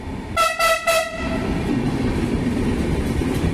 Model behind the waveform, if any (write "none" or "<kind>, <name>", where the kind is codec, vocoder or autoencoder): none